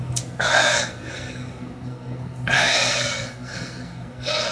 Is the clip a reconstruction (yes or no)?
yes